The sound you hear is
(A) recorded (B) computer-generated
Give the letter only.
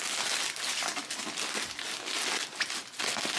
A